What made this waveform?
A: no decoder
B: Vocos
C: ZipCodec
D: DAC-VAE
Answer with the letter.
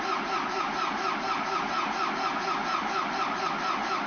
A